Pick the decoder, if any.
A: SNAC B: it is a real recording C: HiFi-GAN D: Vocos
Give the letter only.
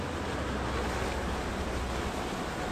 B